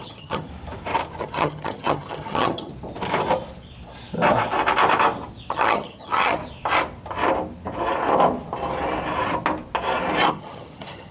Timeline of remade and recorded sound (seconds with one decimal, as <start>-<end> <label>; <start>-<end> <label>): 0.0-0.5 remade; 0.5-1.2 recorded; 1.2-2.7 remade; 2.7-5.5 recorded; 5.5-6.4 remade; 6.4-10.3 recorded; 10.3-11.1 remade